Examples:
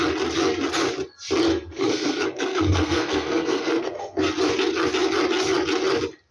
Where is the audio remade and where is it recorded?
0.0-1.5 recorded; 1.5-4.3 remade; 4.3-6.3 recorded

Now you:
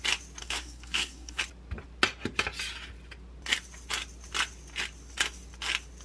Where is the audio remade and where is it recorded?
0.0-0.4 recorded; 0.4-1.4 remade; 1.4-6.0 recorded

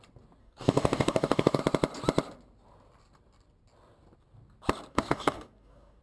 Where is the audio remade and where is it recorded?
0.0-0.4 recorded; 0.4-1.6 remade; 1.6-4.9 recorded; 4.9-6.0 remade

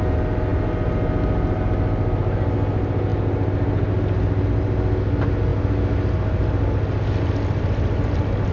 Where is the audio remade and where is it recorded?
0.0-8.5 recorded

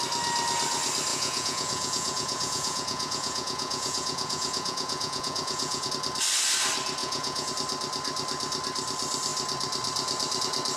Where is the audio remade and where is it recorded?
0.0-1.1 recorded; 1.1-5.9 remade; 5.9-7.0 recorded; 7.0-7.5 remade; 7.5-10.8 recorded

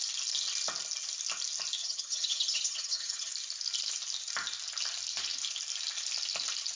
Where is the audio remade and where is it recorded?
0.0-1.8 recorded; 1.8-3.3 remade; 3.3-6.8 recorded

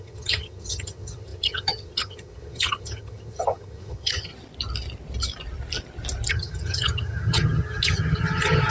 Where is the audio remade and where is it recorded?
0.0-4.3 remade; 4.3-6.3 recorded; 6.3-8.7 remade

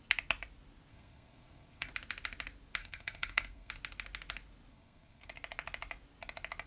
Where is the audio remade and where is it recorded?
0.0-0.9 recorded; 0.9-1.9 remade; 1.9-2.8 recorded; 2.8-3.7 remade; 3.7-4.7 recorded; 4.7-5.3 remade; 5.3-6.7 recorded